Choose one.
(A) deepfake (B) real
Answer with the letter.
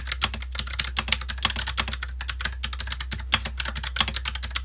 B